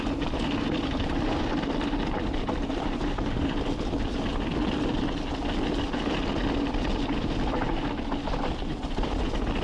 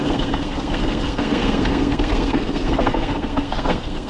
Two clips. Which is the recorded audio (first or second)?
first